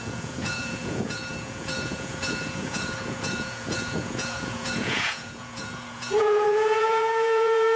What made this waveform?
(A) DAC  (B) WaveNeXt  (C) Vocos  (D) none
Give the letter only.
C